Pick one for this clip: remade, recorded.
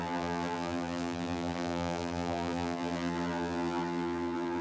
remade